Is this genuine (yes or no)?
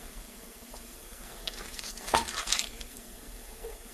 no